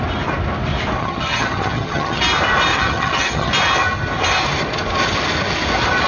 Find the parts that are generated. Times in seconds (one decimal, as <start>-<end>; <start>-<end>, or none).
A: 1.0-2.2; 2.7-3.5